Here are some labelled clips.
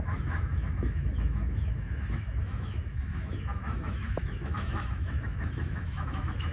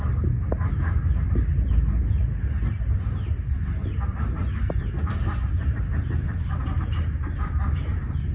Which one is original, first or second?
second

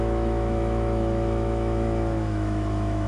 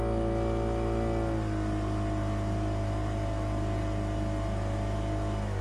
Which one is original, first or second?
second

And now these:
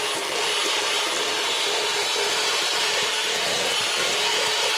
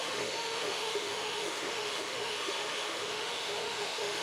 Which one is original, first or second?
first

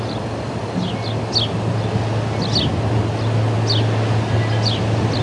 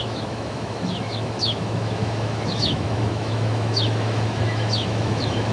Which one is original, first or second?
first